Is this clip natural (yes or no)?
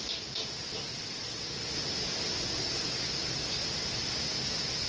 yes